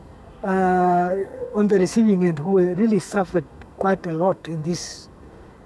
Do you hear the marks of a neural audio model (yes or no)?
yes